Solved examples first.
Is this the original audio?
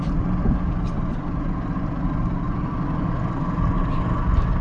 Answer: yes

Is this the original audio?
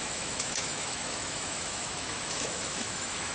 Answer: no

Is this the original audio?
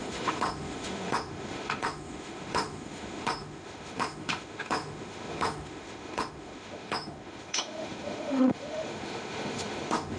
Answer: no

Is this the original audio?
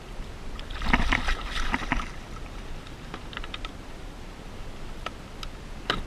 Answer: yes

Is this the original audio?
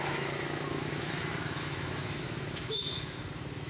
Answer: no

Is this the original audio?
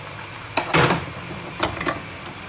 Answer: yes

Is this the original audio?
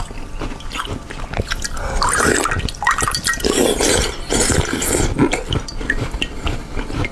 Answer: yes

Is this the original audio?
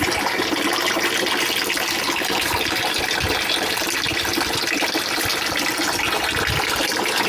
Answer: yes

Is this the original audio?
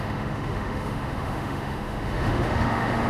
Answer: no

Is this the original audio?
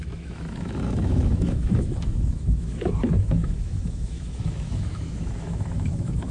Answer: no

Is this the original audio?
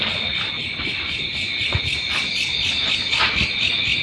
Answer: yes